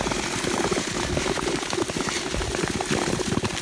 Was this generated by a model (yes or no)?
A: no